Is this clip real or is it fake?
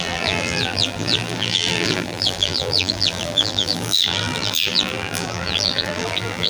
fake